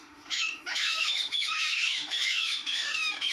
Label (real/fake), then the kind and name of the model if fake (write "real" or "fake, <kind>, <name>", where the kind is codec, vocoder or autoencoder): fake, autoencoder, DAC-VAE